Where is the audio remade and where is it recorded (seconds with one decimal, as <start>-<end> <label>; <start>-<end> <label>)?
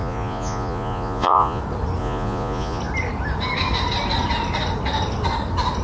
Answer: 0.0-1.6 remade; 1.6-2.0 recorded; 2.0-2.8 remade; 2.8-5.8 recorded